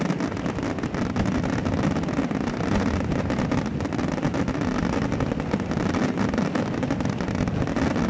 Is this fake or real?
real